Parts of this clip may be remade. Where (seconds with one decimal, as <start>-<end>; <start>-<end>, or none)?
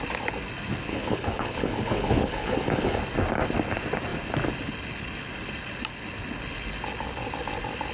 0.9-3.0